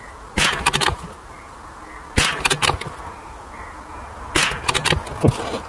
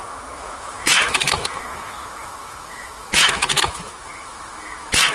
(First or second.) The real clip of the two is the first